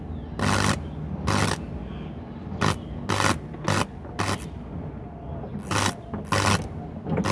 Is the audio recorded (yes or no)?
yes